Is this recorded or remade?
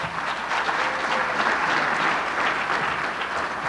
recorded